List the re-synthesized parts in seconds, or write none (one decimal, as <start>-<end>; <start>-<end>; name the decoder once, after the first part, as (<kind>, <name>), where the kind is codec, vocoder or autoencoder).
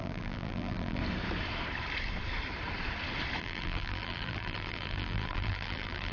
0.0-1.0 (vocoder, BigVGAN v2); 3.4-6.1